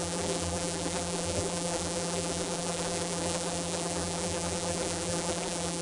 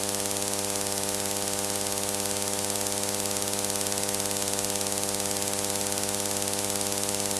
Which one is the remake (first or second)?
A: first